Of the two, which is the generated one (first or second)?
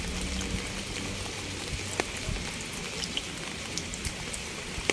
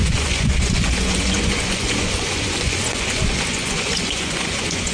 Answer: second